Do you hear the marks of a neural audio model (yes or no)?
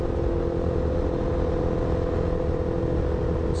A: no